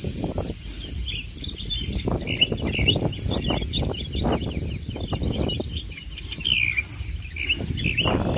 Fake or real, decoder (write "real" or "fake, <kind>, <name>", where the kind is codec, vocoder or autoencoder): real